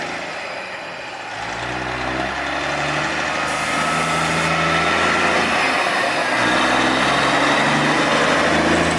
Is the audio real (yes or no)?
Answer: yes